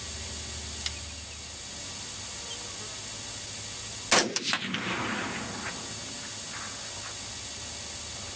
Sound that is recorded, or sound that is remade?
recorded